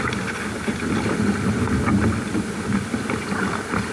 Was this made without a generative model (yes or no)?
yes